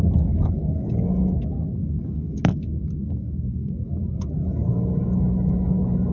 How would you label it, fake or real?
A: fake